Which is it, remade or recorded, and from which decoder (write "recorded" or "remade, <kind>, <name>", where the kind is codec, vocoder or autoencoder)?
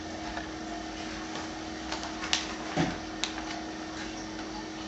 recorded